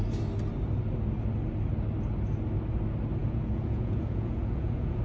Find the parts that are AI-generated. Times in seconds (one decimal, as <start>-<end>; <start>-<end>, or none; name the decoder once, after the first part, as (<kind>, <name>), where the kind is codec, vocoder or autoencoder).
3.2-5.0 (vocoder, Vocos)